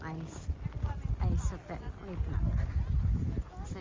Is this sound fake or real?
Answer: real